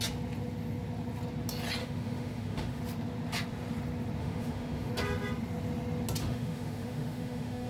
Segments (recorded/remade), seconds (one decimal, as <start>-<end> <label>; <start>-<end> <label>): 0.0-1.8 recorded; 1.8-2.8 remade; 2.8-4.2 recorded; 4.2-4.9 remade; 4.9-6.2 recorded; 6.2-7.7 remade